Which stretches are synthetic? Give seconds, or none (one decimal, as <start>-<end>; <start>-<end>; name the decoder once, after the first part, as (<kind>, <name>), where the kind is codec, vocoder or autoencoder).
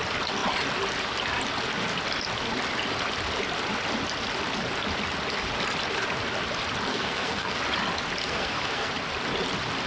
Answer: 6.9-7.6 (codec, SNAC); 8.2-8.9